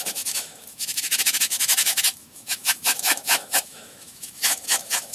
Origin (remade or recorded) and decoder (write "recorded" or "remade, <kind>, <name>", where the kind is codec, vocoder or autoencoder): remade, autoencoder, DAC-VAE